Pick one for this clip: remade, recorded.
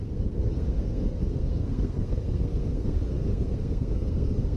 remade